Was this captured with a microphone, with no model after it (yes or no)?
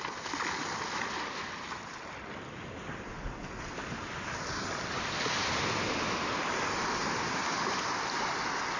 yes